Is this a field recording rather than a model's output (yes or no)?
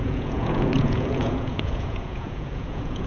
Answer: no